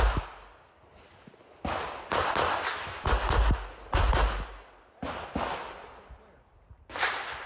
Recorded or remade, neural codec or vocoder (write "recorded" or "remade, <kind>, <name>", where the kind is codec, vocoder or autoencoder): recorded